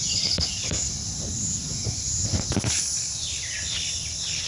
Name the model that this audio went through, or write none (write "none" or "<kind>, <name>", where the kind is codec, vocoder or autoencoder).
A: none